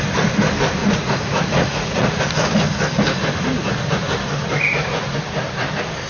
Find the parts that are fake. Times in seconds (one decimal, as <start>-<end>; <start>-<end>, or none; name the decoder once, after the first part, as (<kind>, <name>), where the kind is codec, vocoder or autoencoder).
0.8-2.2 (vocoder, Vocos)